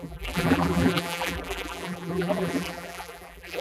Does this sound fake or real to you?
fake